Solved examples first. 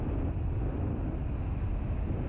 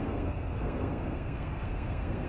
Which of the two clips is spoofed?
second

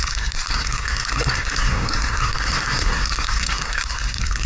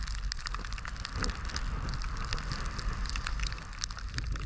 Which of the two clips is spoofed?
first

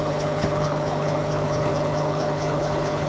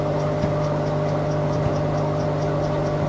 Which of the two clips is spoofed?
first